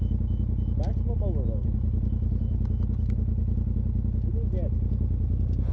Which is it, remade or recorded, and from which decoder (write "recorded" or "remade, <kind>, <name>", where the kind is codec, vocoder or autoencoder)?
recorded